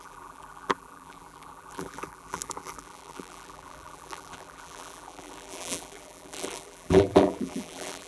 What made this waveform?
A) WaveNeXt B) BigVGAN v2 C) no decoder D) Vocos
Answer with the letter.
B